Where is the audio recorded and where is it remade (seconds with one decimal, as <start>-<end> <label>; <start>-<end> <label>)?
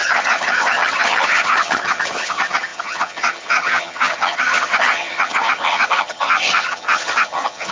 0.0-7.7 remade